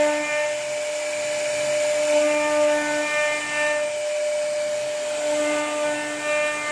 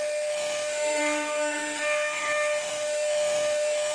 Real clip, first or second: first